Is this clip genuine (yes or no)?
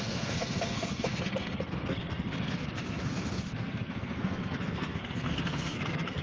no